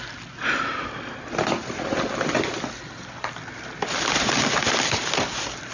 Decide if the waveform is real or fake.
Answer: real